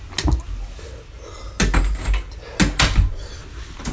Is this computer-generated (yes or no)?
no